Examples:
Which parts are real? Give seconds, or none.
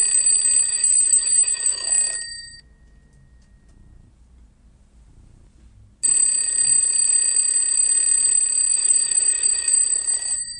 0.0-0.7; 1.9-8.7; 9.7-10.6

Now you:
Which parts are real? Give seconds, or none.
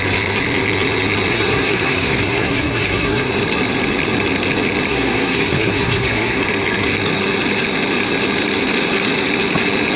0.0-1.3; 3.3-4.9; 6.4-10.0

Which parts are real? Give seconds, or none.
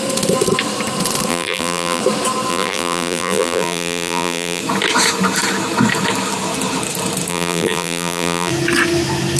0.0-1.3; 2.0-2.5; 4.6-7.3; 8.5-9.4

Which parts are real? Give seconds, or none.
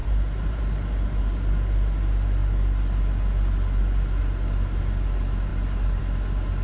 0.6-6.6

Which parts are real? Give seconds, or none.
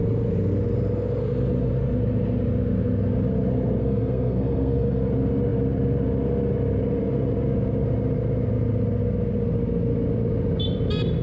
0.0-3.8; 5.1-11.2